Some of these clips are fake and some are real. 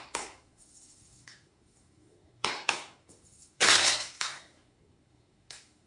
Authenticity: fake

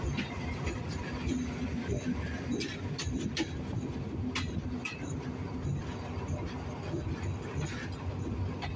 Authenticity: real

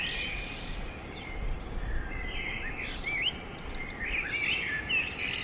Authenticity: real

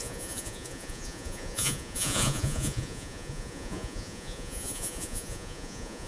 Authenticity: fake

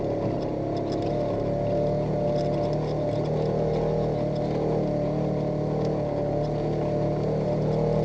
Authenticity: real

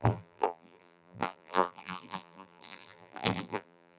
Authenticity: fake